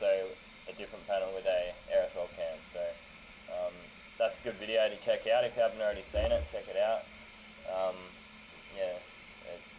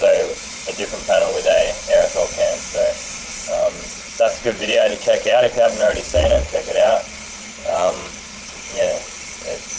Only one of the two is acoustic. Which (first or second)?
first